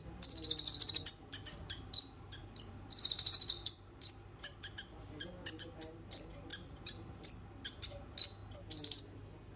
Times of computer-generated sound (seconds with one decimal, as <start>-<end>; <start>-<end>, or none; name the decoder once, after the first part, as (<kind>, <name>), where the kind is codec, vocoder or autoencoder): 1.6-5.3 (vocoder, BigVGAN v2); 6.5-7.3